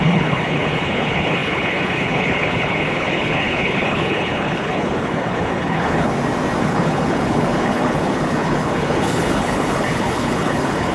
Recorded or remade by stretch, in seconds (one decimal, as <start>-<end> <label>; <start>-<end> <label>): 0.0-6.1 remade; 6.1-6.6 recorded; 6.6-10.9 remade